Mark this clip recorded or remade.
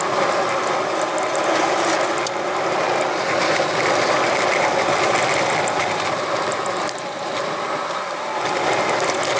remade